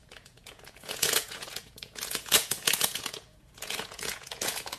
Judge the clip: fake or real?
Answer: fake